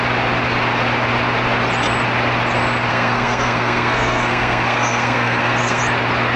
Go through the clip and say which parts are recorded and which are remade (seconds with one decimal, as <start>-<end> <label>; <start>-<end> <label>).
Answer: 0.0-2.9 recorded; 2.9-5.8 remade; 5.8-6.4 recorded